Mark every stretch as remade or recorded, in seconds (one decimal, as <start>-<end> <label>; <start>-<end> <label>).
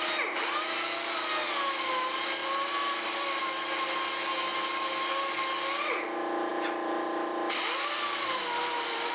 0.0-2.4 recorded; 2.4-3.4 remade; 3.4-6.5 recorded; 6.5-9.1 remade